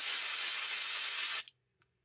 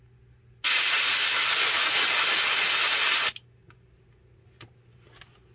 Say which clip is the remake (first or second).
first